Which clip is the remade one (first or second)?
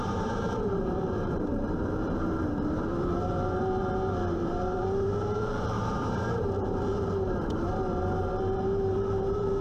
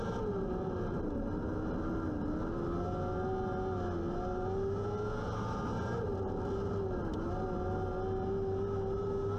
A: first